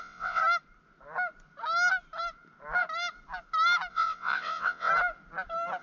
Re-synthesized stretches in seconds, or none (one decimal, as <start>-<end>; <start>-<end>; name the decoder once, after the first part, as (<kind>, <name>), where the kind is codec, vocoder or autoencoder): 0.0-0.4 (vocoder, WaveNeXt); 3.9-4.9